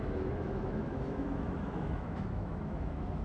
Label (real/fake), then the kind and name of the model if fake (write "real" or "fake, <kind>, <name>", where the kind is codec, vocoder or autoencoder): fake, autoencoder, DAC-VAE